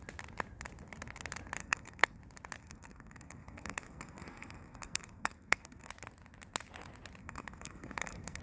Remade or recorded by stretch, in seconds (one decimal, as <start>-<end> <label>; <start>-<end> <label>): 0.0-1.6 recorded; 1.6-2.2 remade; 2.2-2.6 recorded; 2.6-5.9 remade; 5.9-7.2 recorded; 7.2-8.4 remade